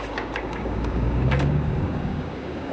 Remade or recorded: remade